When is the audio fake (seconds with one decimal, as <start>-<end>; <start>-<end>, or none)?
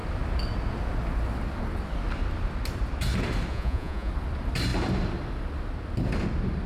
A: 3.5-4.1